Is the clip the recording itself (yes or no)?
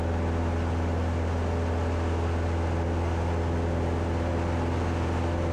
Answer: yes